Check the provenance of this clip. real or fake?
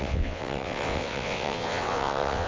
fake